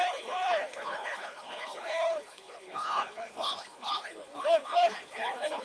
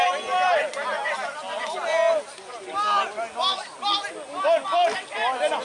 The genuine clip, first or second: second